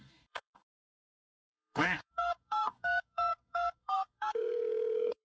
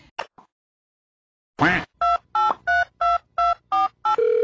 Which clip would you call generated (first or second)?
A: first